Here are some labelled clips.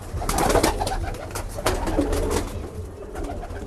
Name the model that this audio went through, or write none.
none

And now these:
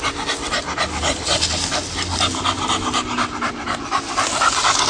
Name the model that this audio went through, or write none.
none